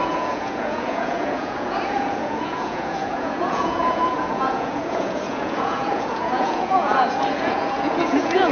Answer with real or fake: fake